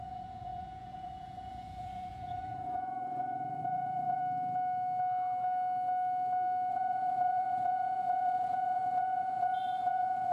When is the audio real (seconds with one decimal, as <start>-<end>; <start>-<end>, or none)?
4.2-6.7